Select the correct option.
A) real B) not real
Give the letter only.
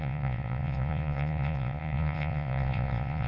B